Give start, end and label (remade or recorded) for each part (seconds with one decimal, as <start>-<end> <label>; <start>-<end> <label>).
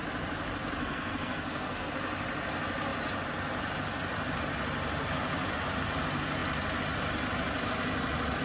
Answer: 0.0-0.8 recorded; 0.8-1.9 remade; 1.9-8.4 recorded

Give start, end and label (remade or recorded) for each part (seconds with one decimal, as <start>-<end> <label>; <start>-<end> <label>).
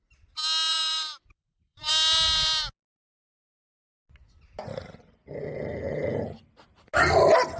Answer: 0.0-0.7 recorded; 0.7-1.9 remade; 1.9-7.6 recorded